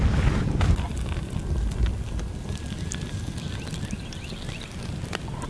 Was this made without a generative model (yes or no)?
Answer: yes